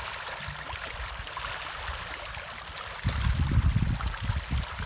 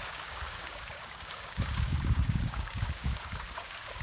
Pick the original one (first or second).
first